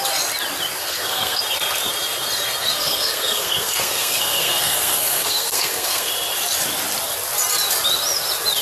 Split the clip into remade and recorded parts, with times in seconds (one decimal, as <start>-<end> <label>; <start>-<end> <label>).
0.0-0.8 recorded; 0.8-1.4 remade; 1.4-2.6 recorded; 2.6-6.1 remade; 6.1-8.6 recorded